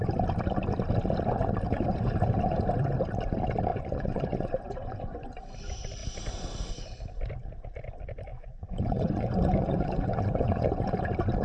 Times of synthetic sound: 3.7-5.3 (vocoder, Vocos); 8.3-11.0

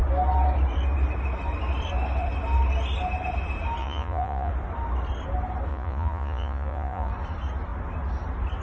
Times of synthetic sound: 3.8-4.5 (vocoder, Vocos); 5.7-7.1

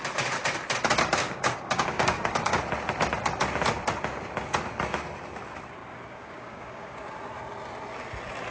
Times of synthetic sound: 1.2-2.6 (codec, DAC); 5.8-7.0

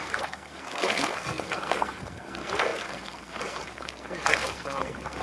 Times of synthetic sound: 0.0-5.2 (codec, SNAC)

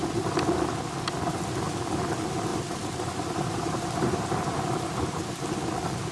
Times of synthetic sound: 2.5-5.3 (vocoder, BigVGAN v2)

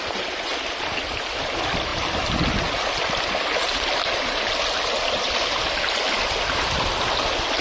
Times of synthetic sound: 0.5-1.3 (vocoder, BigVGAN v2)

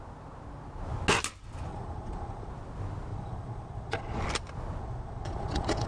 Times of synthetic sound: 1.7-2.5 (vocoder, Vocos); 3.1-4.2; 4.8-5.9

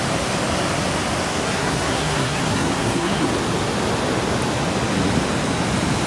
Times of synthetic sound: 1.3-3.3 (codec, SNAC)